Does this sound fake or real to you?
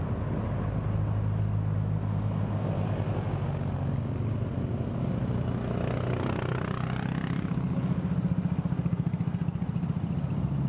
real